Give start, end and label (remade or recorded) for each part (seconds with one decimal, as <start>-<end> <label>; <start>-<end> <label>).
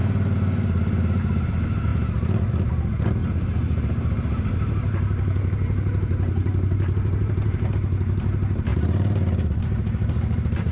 0.0-1.2 remade; 1.2-1.9 recorded; 1.9-2.4 remade; 2.4-3.2 recorded; 3.2-7.7 remade; 7.7-8.7 recorded; 8.7-10.7 remade